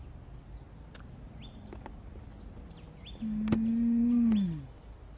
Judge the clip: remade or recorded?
recorded